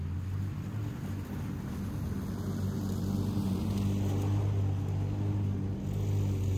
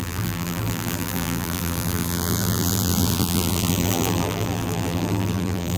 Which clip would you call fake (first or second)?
second